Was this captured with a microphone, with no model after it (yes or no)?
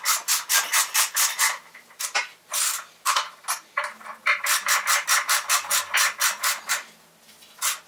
yes